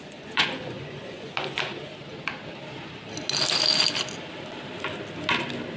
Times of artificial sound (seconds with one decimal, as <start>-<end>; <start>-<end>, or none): 0.0-1.9